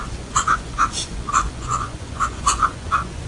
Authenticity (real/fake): fake